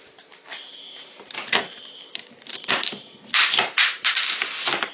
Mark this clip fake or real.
fake